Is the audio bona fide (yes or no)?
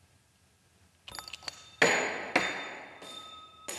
yes